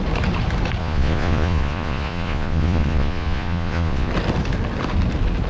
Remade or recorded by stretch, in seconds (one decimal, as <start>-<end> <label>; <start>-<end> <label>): 0.0-0.8 recorded; 0.8-4.1 remade; 4.1-5.5 recorded